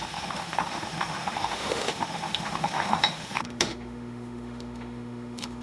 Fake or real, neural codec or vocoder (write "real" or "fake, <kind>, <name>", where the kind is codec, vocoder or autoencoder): fake, autoencoder, DAC-VAE